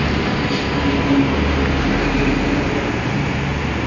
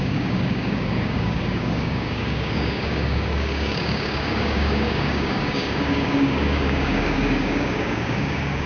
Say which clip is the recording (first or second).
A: first